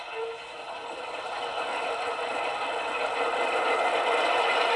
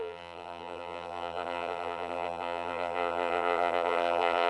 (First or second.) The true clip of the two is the first